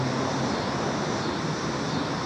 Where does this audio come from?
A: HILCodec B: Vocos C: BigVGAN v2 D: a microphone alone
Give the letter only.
D